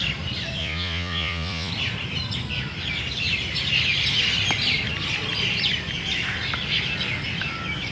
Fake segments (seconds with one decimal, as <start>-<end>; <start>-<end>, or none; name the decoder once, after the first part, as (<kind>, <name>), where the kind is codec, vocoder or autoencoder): 0.6-1.7 (vocoder, Vocos)